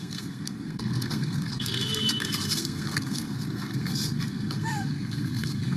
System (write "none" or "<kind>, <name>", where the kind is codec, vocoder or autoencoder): codec, SNAC